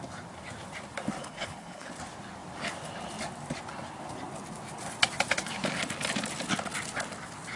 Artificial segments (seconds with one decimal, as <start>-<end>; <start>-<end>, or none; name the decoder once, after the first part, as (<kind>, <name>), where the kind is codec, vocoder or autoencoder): 1.2-1.9 (codec, HILCodec)